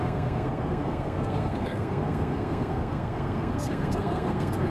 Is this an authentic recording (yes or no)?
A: no